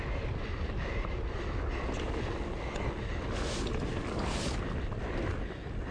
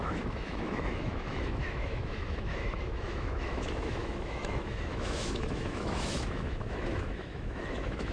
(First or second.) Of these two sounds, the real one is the first